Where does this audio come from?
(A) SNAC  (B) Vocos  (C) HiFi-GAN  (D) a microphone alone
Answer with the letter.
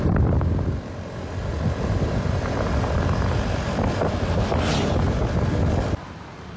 D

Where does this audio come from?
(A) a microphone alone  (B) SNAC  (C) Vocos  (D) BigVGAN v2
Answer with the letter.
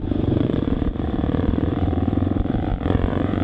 C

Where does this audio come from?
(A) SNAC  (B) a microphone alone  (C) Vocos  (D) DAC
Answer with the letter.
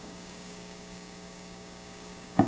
D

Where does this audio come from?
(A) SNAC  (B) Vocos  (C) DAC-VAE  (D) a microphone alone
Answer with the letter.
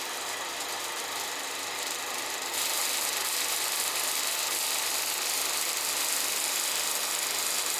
D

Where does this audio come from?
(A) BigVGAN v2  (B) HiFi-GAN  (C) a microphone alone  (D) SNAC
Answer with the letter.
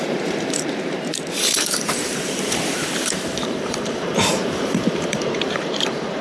A